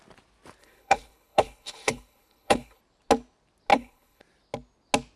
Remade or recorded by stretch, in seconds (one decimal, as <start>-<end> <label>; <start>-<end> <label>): 0.0-0.6 recorded; 0.6-2.8 remade; 2.8-3.7 recorded; 3.7-4.2 remade; 4.2-5.2 recorded